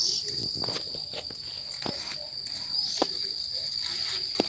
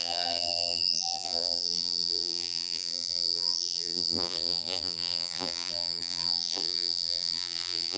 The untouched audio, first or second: first